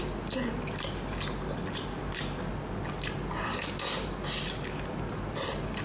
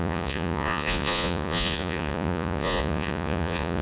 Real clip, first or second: first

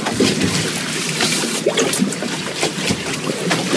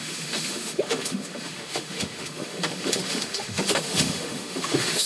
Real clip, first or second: first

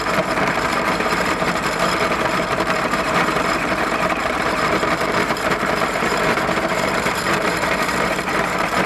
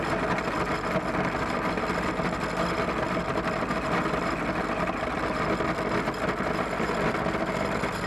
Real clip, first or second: second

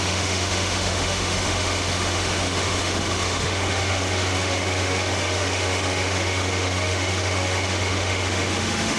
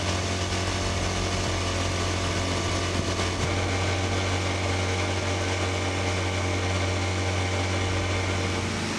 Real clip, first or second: second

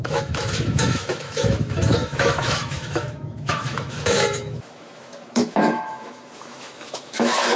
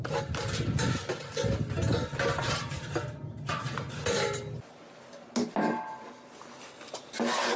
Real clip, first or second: second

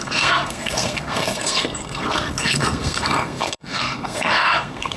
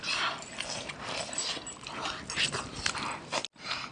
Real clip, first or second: second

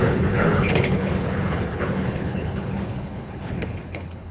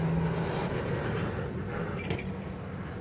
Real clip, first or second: second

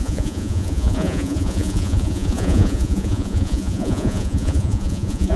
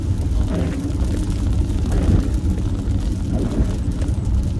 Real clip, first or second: second